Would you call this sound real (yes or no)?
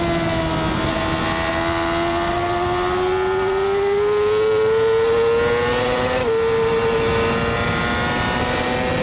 yes